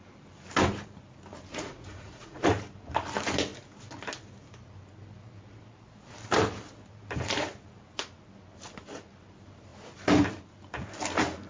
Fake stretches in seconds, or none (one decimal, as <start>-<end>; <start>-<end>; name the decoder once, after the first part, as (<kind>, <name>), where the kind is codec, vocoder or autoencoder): 1.5-2.4 (vocoder, Vocos)